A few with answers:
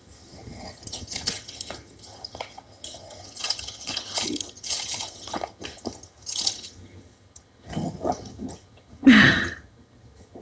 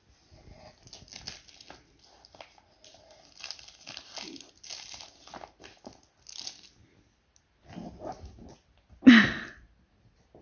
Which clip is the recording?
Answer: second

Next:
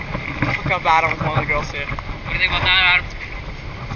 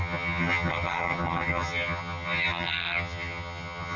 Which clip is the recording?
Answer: first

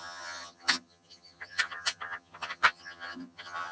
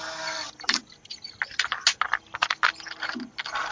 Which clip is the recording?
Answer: second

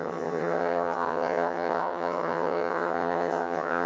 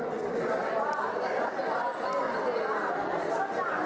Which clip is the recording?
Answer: second